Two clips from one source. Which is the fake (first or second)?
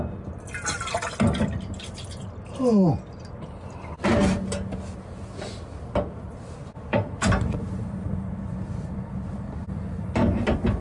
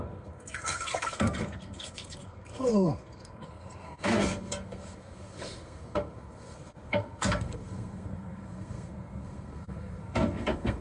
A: second